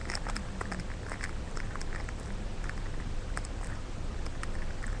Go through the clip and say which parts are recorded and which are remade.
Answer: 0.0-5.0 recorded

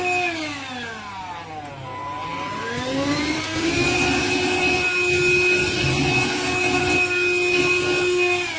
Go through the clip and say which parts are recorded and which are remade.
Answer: 0.0-8.6 recorded